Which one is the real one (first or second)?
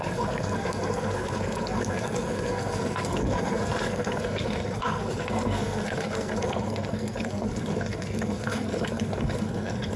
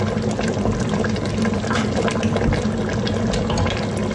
second